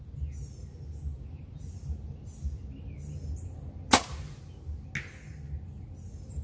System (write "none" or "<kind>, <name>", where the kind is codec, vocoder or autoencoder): none